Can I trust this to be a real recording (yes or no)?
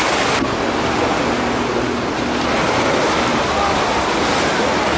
yes